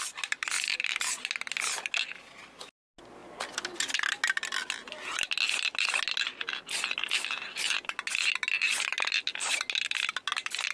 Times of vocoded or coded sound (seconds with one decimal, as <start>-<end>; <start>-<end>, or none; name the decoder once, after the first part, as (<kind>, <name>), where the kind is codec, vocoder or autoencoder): 0.7-1.3 (vocoder, BigVGAN v2)